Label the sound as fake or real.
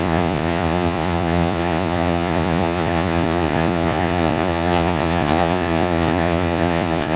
fake